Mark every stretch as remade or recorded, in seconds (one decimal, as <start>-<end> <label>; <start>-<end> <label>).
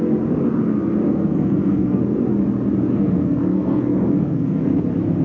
0.0-1.2 recorded; 1.2-2.0 remade; 2.0-2.9 recorded; 2.9-4.8 remade; 4.8-5.2 recorded